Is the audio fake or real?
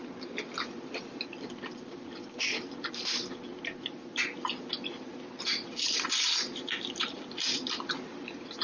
real